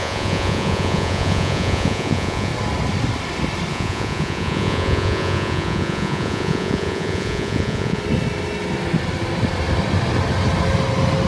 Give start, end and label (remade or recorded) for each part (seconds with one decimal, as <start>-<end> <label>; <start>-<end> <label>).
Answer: 0.0-2.5 remade; 2.5-3.7 recorded; 3.7-8.0 remade; 8.0-11.3 recorded